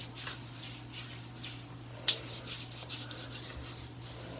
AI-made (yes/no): no